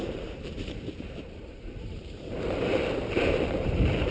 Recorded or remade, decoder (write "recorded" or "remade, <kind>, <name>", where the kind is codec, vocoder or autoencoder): remade, vocoder, BigVGAN v2